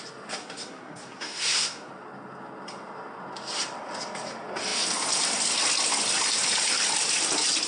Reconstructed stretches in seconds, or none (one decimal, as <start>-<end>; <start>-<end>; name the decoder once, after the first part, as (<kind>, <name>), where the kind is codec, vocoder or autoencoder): 0.4-1.9 (codec, SNAC)